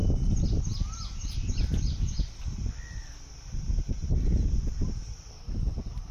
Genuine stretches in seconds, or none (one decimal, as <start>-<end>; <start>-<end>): 0.0-6.1